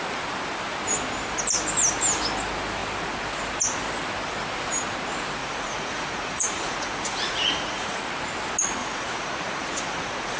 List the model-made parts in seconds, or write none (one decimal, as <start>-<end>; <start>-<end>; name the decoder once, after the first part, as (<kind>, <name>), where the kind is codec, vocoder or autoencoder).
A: 5.4-8.0 (vocoder, Vocos); 8.8-10.4